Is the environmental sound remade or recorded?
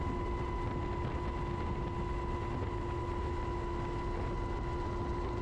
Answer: recorded